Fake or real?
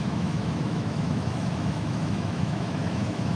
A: fake